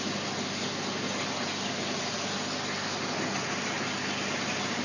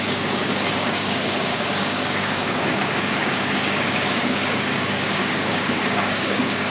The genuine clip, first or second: first